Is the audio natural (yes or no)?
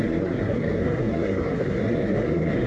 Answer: no